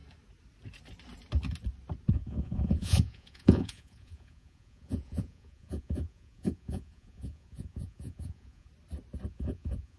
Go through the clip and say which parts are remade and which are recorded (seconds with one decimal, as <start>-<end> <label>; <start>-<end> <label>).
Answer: 0.0-2.1 recorded; 2.1-8.7 remade; 8.7-9.3 recorded; 9.3-10.0 remade